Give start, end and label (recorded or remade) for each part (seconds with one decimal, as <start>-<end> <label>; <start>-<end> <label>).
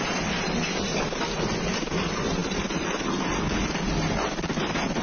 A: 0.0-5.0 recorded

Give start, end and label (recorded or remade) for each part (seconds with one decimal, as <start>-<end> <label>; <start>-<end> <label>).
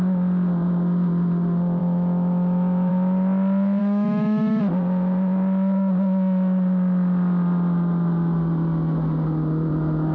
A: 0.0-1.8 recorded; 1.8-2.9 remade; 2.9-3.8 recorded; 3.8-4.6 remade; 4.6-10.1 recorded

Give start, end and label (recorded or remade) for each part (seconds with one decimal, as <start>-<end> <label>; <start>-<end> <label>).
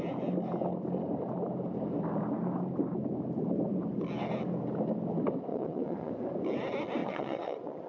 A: 0.0-5.5 recorded; 5.5-6.1 remade; 6.1-7.0 recorded; 7.0-7.9 remade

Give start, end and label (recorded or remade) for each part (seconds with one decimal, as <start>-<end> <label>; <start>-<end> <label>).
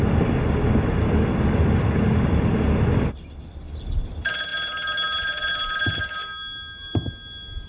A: 0.0-7.7 recorded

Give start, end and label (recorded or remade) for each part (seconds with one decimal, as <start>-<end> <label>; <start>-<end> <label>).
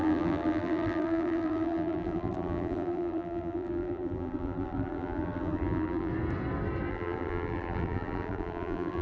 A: 0.0-6.1 remade; 6.1-6.9 recorded; 6.9-9.0 remade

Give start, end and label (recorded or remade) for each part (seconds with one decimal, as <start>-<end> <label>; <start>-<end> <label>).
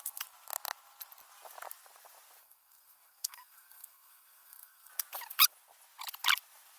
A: 0.0-2.4 recorded; 2.4-4.9 remade; 4.9-6.8 recorded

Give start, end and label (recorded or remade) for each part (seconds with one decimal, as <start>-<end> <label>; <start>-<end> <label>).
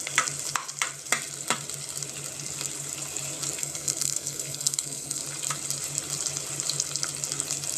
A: 0.0-3.6 recorded; 3.6-5.2 remade; 5.2-7.8 recorded